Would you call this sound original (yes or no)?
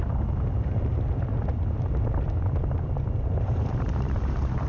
no